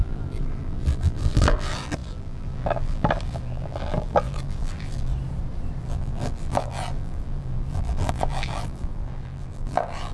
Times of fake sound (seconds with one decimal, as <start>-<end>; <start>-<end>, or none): 0.0-5.1; 5.8-10.1